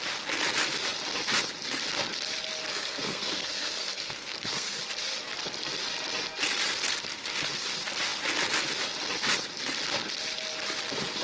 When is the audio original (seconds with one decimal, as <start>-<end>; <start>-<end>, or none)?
0.0-2.7; 4.8-11.2